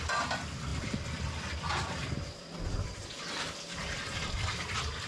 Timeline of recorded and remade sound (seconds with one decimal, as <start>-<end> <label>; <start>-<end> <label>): 0.0-0.7 recorded; 0.7-3.8 remade; 3.8-5.1 recorded